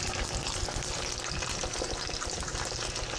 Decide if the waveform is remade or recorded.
recorded